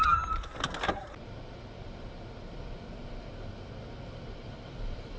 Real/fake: real